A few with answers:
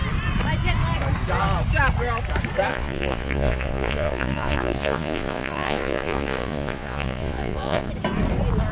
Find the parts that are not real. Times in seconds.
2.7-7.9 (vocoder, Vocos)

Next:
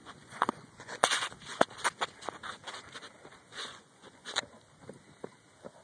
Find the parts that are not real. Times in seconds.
0.0-1.3 (vocoder, Vocos); 3.5-4.4

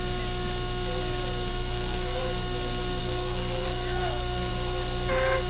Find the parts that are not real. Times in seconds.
1.5-2.2 (codec, SNAC); 3.0-4.5